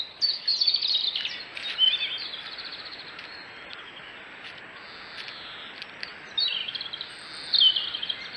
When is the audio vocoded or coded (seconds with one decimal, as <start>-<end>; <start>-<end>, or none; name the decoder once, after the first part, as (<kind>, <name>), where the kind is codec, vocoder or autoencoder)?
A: none